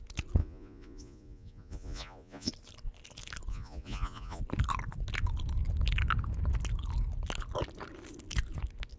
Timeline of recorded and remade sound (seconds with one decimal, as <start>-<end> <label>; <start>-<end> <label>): 0.0-0.4 recorded; 0.4-2.5 remade; 2.5-3.5 recorded; 3.5-4.4 remade; 4.4-9.0 recorded